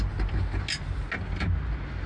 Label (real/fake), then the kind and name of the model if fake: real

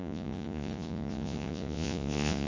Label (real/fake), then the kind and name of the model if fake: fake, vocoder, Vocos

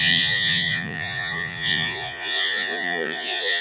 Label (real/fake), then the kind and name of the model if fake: fake, vocoder, Vocos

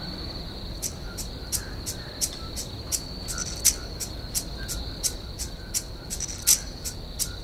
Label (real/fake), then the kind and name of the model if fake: real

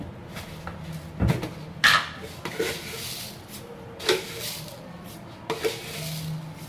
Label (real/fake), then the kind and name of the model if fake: real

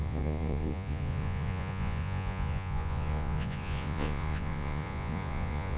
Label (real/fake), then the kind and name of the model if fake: fake, vocoder, Vocos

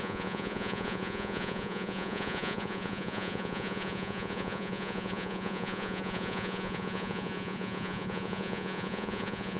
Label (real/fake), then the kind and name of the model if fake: fake, vocoder, Vocos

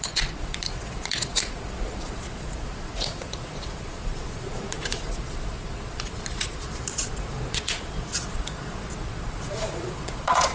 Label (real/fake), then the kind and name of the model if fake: fake, vocoder, Vocos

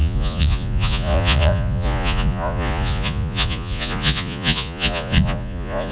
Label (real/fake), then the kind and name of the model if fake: fake, vocoder, Vocos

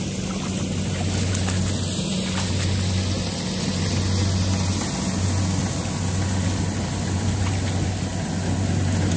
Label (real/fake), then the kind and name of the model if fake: real